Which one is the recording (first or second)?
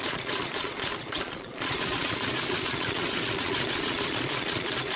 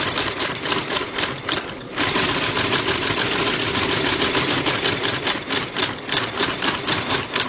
second